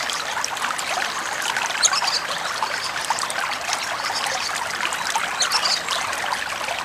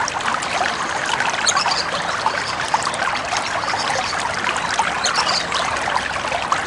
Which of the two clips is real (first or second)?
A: first